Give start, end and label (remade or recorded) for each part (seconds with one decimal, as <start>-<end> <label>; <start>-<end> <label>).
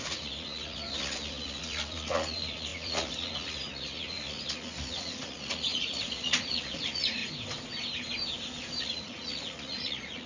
0.0-7.2 remade; 7.2-8.8 recorded; 8.8-10.3 remade